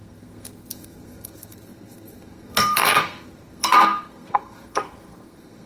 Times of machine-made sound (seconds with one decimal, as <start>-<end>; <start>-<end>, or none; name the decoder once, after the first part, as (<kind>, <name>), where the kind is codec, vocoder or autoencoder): 0.0-5.7 (codec, SNAC)